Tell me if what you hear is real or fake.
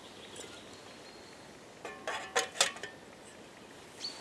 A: real